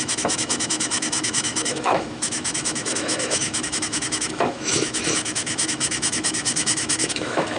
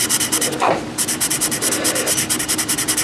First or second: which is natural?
second